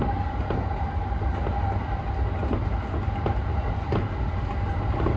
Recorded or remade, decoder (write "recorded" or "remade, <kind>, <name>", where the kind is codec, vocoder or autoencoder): recorded